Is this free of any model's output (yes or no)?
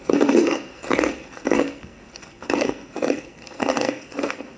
no